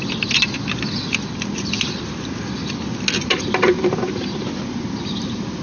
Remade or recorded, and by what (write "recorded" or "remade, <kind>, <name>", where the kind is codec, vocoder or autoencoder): recorded